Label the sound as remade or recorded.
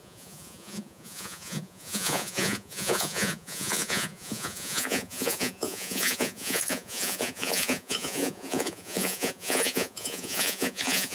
remade